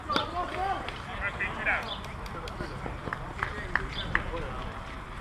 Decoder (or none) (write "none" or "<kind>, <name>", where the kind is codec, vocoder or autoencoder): none